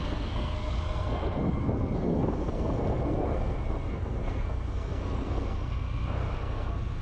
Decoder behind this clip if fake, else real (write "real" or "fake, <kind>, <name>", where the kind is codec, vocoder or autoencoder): fake, codec, SNAC